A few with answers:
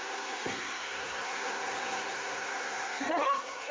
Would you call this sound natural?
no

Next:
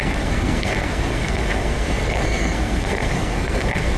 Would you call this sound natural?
no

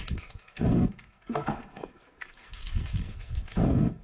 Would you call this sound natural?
no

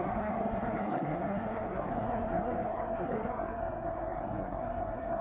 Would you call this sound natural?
no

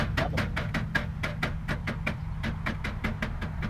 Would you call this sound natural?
yes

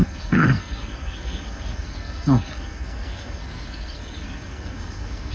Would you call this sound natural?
no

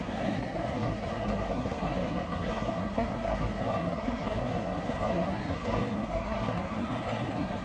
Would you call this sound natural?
no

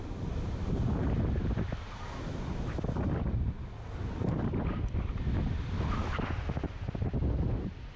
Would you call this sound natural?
yes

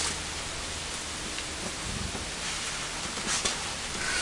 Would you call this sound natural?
yes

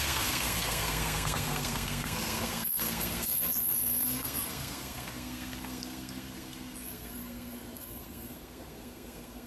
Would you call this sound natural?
no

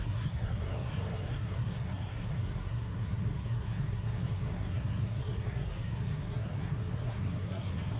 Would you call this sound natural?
no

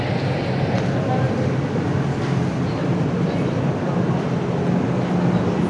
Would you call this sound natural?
yes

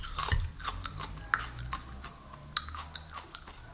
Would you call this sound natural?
yes